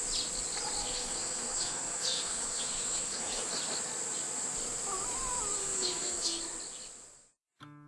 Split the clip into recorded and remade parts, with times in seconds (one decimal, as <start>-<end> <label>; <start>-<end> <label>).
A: 0.0-0.8 recorded; 0.8-3.5 remade; 3.5-5.6 recorded; 5.6-6.4 remade; 6.4-7.9 recorded